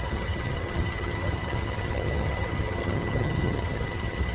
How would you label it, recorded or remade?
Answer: remade